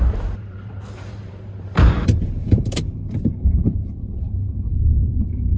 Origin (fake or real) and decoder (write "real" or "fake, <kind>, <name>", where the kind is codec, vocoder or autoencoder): fake, vocoder, BigVGAN v2